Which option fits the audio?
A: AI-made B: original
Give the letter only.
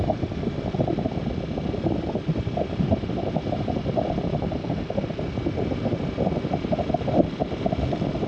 B